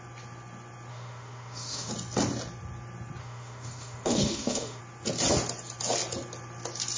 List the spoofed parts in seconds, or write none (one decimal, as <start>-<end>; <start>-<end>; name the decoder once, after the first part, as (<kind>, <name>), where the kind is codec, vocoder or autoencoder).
0.9-1.9 (autoencoder, DAC-VAE); 3.2-4.8